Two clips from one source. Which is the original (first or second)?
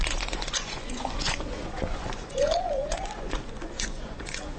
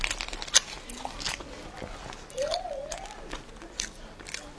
second